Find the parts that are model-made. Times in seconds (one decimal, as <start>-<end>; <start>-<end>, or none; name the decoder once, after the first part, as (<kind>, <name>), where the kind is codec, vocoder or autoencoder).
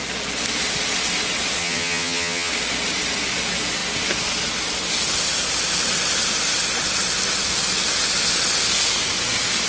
1.6-2.5 (vocoder, HiFi-GAN)